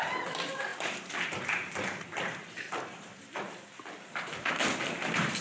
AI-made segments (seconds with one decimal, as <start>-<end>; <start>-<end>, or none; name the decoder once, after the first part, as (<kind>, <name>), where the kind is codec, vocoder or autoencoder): none